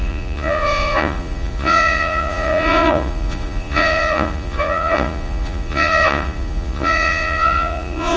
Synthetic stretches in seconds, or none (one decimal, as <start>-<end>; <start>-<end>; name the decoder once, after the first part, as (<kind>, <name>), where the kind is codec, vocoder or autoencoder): 0.0-8.2 (vocoder, Vocos)